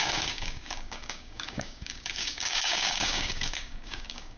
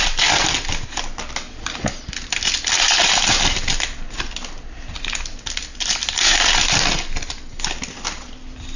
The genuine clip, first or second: second